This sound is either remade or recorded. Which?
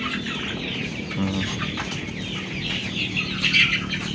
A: recorded